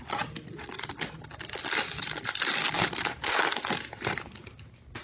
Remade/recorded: recorded